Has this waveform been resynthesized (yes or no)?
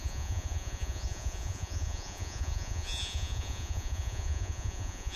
yes